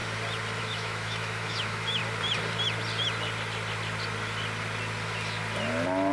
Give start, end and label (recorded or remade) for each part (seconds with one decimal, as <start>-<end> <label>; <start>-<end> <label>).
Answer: 0.0-0.6 recorded; 0.6-2.0 remade; 2.0-6.1 recorded